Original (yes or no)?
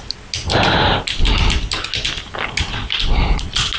yes